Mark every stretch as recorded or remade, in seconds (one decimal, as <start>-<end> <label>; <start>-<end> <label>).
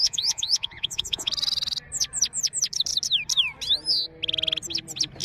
0.0-1.3 remade; 1.3-5.2 recorded